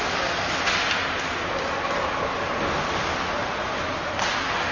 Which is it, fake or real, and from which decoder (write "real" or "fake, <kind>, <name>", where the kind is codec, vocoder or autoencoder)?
real